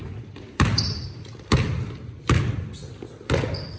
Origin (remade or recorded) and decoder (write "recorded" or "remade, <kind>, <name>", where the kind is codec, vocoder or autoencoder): recorded